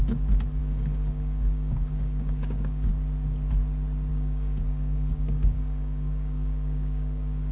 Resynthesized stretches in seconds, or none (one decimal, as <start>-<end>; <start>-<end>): 0.6-2.9; 4.1-7.5